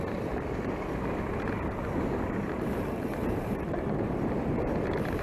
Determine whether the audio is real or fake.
fake